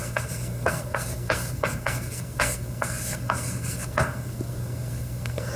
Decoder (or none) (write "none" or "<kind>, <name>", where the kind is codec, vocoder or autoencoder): codec, SNAC